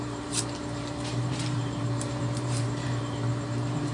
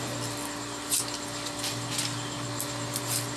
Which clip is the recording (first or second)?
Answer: second